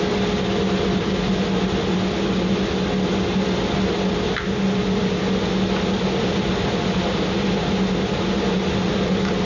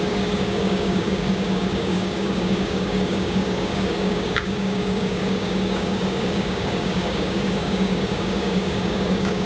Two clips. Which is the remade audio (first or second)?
second